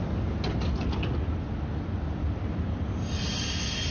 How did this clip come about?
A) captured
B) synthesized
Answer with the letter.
A